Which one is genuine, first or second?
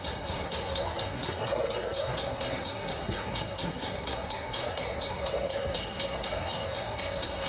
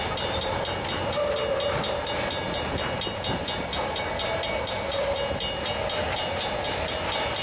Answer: second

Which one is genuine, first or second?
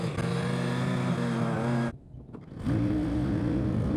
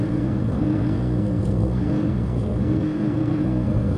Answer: first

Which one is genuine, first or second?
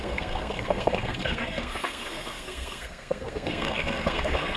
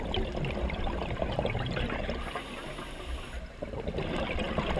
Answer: second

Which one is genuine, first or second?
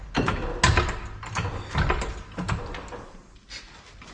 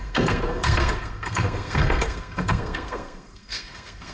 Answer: first